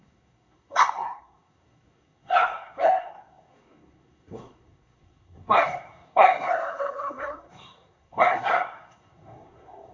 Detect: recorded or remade remade